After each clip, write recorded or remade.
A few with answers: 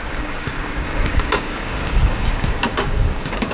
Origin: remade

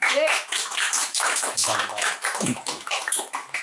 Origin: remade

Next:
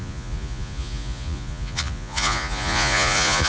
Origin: remade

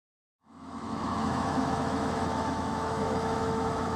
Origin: remade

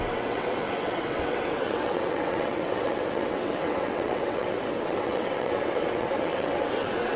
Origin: remade